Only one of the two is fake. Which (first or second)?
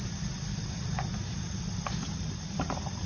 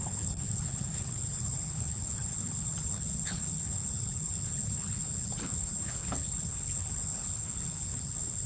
second